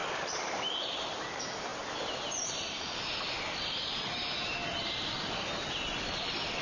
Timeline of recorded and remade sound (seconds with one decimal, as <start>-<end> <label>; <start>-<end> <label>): 0.0-6.6 recorded